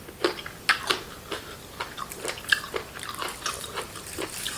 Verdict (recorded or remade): recorded